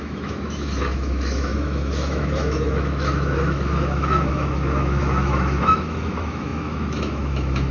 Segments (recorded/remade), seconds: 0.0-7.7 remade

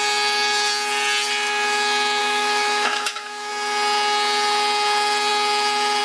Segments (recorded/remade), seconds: 0.0-2.2 recorded; 2.2-3.5 remade; 3.5-6.0 recorded